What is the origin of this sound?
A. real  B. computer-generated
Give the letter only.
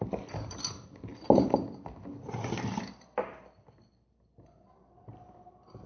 B